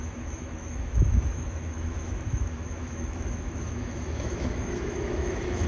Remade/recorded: remade